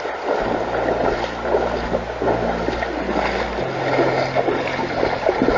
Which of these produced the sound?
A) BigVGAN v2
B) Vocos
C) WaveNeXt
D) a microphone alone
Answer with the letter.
D